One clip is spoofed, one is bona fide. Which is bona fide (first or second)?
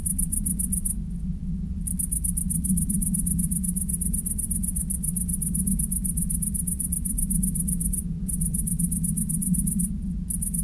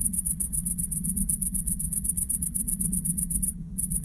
first